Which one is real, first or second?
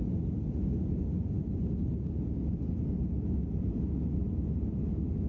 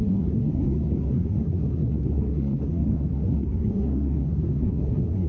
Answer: first